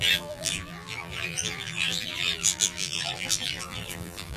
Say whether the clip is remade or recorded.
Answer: remade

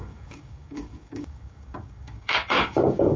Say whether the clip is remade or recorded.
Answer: remade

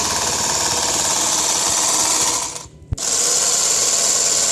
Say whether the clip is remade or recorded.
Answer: recorded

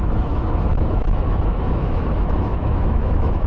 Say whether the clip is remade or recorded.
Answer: remade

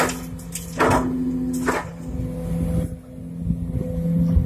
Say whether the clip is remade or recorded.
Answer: recorded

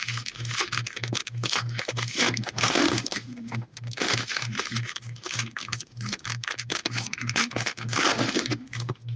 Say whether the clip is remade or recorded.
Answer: remade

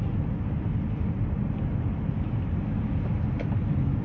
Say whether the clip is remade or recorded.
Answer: recorded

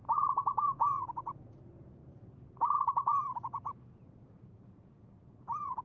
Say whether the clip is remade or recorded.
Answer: remade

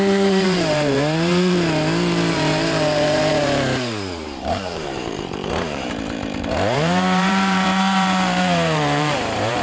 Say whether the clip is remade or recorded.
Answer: remade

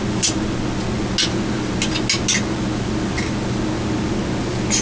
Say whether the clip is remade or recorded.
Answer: recorded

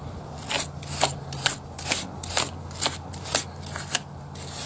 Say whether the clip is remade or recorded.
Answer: recorded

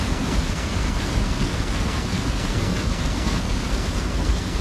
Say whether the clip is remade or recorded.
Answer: remade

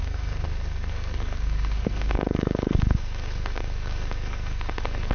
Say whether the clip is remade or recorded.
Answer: remade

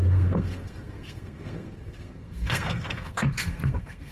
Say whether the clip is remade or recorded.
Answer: remade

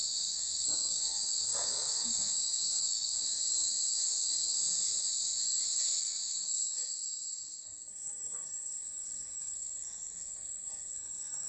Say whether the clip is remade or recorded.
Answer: remade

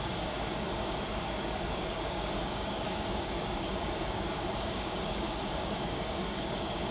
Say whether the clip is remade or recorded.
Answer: remade